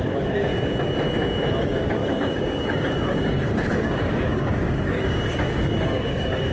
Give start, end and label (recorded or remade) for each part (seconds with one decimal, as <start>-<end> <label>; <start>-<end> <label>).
0.0-0.5 remade; 0.5-1.6 recorded; 1.6-6.5 remade